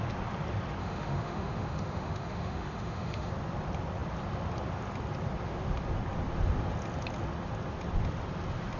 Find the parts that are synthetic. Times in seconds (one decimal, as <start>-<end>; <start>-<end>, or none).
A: 0.8-3.3